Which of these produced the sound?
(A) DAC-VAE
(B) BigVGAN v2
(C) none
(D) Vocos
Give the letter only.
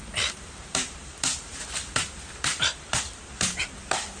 B